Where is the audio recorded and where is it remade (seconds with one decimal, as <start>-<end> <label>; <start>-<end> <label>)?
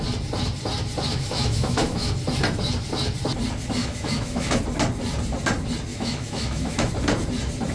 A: 0.0-1.1 recorded; 1.1-2.1 remade; 2.1-3.8 recorded; 3.8-4.6 remade; 4.6-5.9 recorded; 5.9-6.9 remade; 6.9-7.7 recorded